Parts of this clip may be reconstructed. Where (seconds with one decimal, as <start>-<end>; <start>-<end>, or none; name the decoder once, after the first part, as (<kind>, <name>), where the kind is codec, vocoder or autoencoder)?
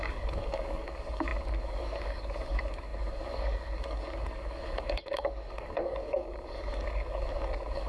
0.0-7.9 (codec, DAC)